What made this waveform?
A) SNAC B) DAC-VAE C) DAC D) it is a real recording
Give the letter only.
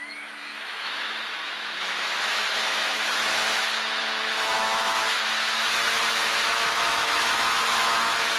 B